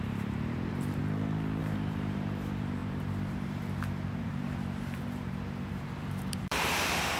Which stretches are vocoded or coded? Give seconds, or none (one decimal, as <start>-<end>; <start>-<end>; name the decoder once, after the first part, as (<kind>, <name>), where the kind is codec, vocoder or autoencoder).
0.0-1.0 (vocoder, BigVGAN v2); 1.6-7.2